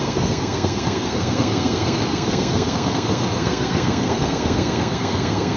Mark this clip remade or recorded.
remade